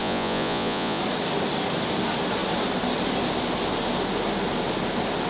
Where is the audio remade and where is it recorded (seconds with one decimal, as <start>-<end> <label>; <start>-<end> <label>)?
0.0-1.0 remade; 1.0-5.3 recorded